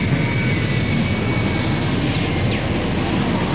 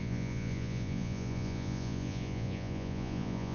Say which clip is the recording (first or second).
first